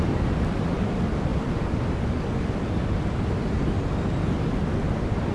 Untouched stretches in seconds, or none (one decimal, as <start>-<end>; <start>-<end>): 0.0-5.3